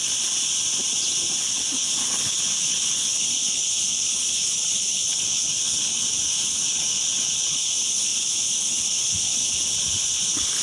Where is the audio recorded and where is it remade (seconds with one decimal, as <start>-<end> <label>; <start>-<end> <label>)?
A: 0.0-1.4 recorded; 1.4-10.6 remade